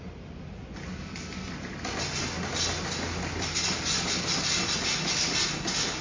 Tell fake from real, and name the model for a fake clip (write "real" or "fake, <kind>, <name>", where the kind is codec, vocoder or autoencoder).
real